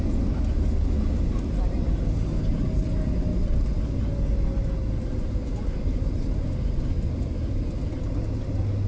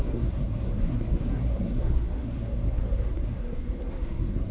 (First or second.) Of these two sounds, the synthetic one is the second